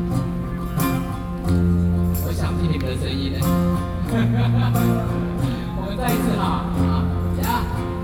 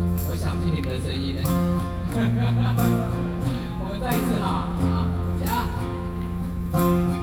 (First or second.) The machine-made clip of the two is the second